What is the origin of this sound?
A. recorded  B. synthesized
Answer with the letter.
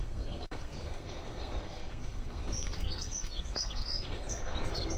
B